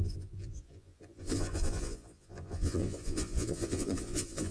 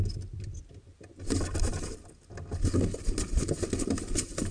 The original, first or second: second